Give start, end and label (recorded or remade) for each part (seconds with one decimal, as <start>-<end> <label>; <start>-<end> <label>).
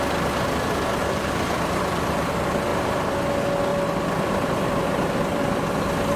0.0-1.0 recorded; 1.0-2.3 remade; 2.3-2.7 recorded; 2.7-3.2 remade; 3.2-3.7 recorded; 3.7-5.4 remade; 5.4-6.2 recorded